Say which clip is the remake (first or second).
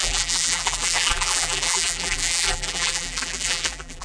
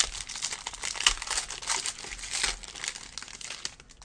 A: first